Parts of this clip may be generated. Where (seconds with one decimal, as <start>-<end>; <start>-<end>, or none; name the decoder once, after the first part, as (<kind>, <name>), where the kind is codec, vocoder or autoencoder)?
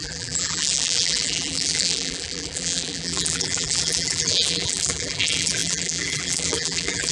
0.0-7.1 (vocoder, BigVGAN v2)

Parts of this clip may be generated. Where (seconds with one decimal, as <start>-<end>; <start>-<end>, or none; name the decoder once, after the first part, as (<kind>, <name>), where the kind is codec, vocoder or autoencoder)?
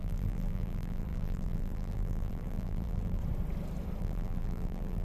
0.0-3.2 (vocoder, BigVGAN v2); 4.0-5.0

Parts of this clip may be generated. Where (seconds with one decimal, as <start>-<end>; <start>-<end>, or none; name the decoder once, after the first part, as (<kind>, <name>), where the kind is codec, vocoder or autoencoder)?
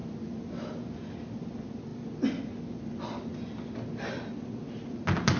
none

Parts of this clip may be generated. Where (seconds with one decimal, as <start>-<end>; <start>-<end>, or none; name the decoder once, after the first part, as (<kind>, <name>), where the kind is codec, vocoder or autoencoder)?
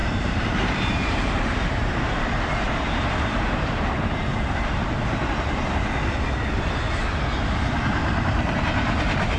0.0-5.0 (vocoder, BigVGAN v2); 8.0-8.6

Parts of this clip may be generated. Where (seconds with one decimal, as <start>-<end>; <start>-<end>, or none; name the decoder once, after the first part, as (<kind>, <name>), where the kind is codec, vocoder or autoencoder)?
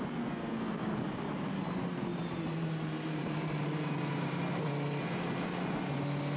2.1-4.0 (vocoder, BigVGAN v2)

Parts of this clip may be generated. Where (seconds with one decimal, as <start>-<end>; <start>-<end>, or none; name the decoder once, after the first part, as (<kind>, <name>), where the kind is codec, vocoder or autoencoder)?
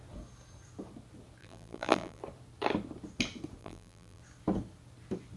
1.4-2.2 (vocoder, BigVGAN v2); 3.6-4.2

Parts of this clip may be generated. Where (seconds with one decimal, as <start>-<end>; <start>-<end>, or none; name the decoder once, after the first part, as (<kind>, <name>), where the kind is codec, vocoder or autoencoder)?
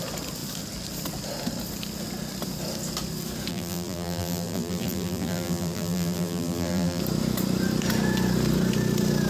3.5-7.0 (vocoder, BigVGAN v2)